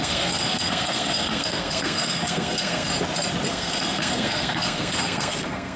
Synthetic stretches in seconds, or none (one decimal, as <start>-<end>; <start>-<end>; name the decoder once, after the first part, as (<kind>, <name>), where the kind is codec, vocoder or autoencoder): 0.0-2.9 (codec, SNAC); 3.5-5.8